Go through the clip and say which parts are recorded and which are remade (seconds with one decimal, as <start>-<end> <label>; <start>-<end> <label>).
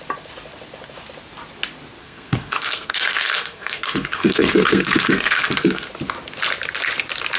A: 0.0-2.0 recorded; 2.0-5.9 remade; 5.9-7.4 recorded